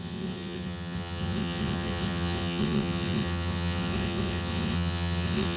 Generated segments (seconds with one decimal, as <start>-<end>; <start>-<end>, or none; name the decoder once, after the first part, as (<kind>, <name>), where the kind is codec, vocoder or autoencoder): 0.0-5.6 (vocoder, WaveNeXt)